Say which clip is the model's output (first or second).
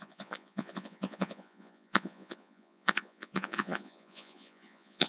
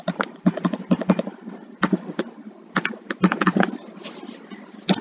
first